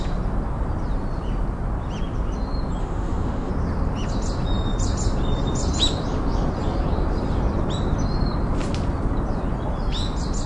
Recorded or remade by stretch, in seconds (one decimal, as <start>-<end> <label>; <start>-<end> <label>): 0.0-2.8 recorded; 2.8-3.5 remade; 3.5-10.5 recorded

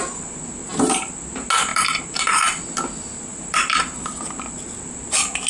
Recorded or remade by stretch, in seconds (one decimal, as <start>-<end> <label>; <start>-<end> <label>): 0.0-1.7 recorded; 1.7-2.3 remade; 2.3-3.3 recorded; 3.3-4.6 remade; 4.6-5.5 recorded

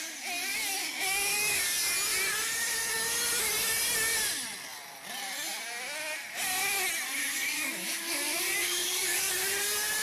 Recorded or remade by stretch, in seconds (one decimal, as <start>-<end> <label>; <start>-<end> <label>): 0.0-0.8 recorded; 0.8-1.6 remade; 1.6-7.2 recorded; 7.2-9.3 remade; 9.3-10.0 recorded

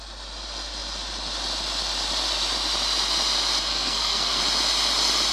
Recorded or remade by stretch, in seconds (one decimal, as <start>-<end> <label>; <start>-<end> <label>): 0.0-3.7 recorded; 3.7-4.4 remade; 4.4-5.3 recorded

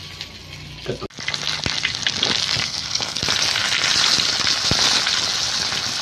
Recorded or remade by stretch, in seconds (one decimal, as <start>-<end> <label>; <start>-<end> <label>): 0.0-2.6 recorded; 2.6-3.2 remade; 3.2-6.0 recorded

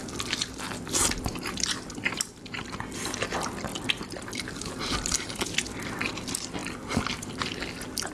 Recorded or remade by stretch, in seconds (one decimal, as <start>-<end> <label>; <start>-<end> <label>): 0.0-8.1 recorded